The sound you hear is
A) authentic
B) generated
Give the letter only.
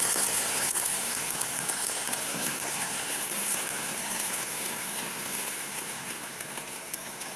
B